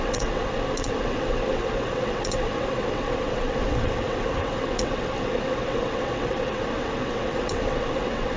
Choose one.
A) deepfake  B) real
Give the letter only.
A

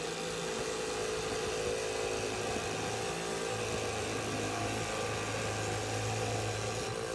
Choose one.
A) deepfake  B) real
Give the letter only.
B